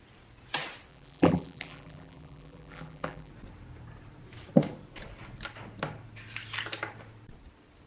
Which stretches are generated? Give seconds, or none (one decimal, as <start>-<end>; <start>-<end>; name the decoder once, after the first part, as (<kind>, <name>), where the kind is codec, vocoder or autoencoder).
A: 0.9-3.3 (vocoder, BigVGAN v2)